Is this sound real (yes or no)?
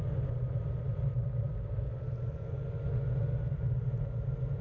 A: yes